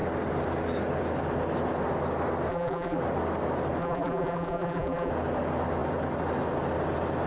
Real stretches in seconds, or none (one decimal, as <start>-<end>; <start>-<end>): 0.0-2.5; 3.0-3.8; 5.1-7.3